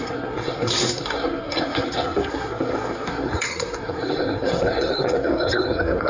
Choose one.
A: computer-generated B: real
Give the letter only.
A